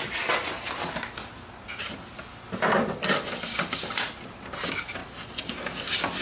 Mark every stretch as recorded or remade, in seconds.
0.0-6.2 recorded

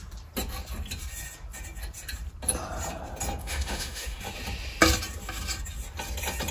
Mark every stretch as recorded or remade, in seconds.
0.0-3.4 recorded; 3.4-4.2 remade; 4.2-6.5 recorded

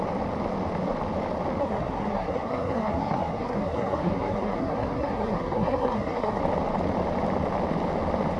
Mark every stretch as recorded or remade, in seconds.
0.0-1.6 recorded; 1.6-6.4 remade; 6.4-8.4 recorded

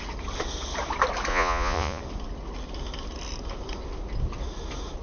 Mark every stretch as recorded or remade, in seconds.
0.0-1.3 recorded; 1.3-2.0 remade; 2.0-5.0 recorded

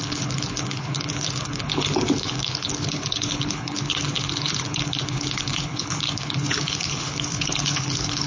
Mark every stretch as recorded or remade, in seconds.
0.0-8.3 remade

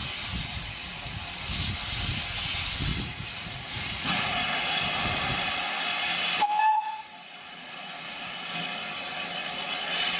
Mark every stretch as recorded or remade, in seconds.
0.0-1.3 remade; 1.3-2.9 recorded; 2.9-4.8 remade; 4.8-6.7 recorded; 6.7-8.4 remade; 8.4-10.2 recorded

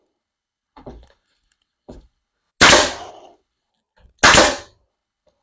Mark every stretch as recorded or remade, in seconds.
0.0-2.5 remade; 2.5-3.1 recorded; 3.1-3.7 remade; 3.7-4.9 recorded; 4.9-5.4 remade

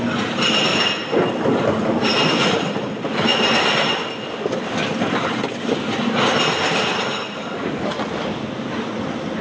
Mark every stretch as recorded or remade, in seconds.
0.0-9.4 recorded